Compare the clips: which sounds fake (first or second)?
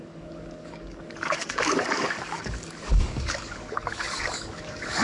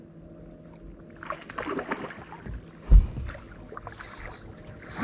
first